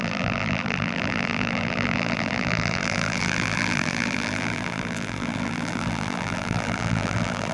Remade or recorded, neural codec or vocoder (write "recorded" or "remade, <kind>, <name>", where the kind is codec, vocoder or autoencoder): remade, vocoder, BigVGAN v2